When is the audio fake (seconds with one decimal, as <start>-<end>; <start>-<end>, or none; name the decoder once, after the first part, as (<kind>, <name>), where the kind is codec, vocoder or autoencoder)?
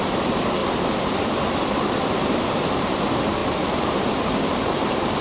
0.0-5.2 (vocoder, BigVGAN v2)